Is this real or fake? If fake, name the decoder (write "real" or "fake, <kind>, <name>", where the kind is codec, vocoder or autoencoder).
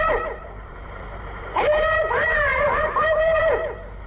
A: fake, vocoder, BigVGAN v2